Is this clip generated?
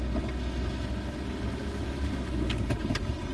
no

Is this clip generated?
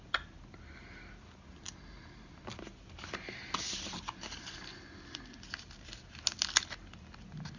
no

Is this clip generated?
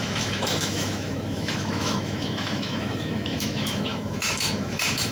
yes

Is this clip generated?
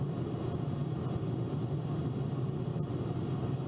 no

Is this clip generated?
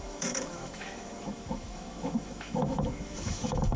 yes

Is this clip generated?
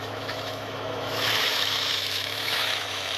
yes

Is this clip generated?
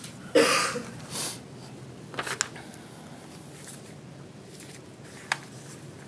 no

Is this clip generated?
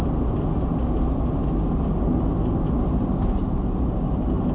no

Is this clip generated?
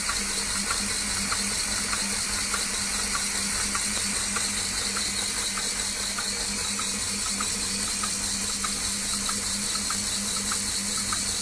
no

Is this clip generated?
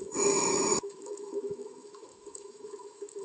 yes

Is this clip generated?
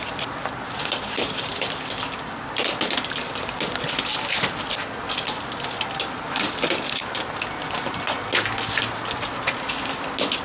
no